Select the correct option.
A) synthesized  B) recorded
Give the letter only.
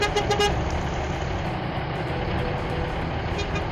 B